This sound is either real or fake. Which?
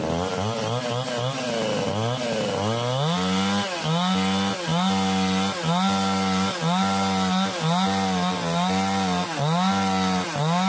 real